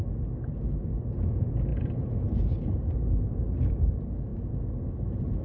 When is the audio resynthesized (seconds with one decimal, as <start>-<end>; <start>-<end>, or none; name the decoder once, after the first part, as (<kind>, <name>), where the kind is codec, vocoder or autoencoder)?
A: none